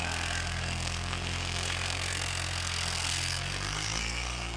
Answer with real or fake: fake